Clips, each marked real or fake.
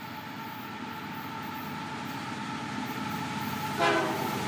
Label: real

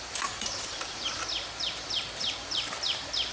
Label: fake